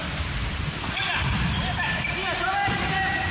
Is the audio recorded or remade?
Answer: recorded